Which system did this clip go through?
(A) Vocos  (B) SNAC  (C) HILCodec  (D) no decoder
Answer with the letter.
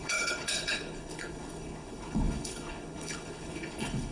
C